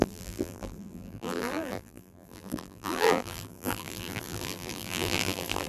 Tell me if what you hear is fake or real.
fake